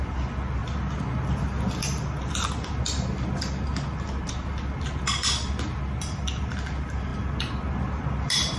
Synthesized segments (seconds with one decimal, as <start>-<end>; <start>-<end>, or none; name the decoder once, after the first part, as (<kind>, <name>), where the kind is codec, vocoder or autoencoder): none

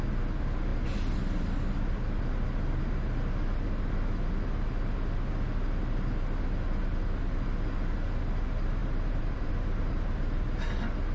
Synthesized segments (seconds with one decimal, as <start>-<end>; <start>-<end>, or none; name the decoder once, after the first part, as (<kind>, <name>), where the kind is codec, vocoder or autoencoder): 8.8-9.5 (vocoder, BigVGAN v2)